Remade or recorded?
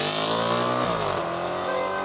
recorded